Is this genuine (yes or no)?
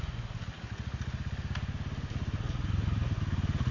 yes